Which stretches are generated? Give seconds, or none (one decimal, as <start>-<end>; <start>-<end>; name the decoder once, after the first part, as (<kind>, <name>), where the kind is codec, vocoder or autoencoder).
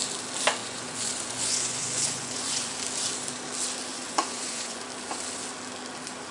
0.6-2.7 (vocoder, Vocos); 3.9-4.8